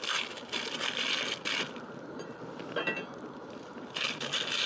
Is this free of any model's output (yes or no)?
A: yes